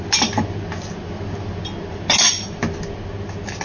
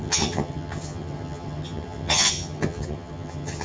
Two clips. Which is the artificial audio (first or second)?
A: second